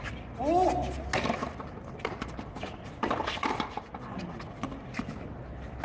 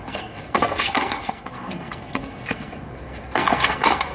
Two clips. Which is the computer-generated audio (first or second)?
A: second